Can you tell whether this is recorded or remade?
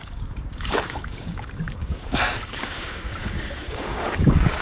remade